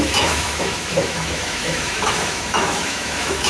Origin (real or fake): fake